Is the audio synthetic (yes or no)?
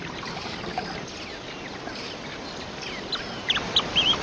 no